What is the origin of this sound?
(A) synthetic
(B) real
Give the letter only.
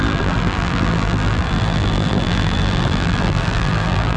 A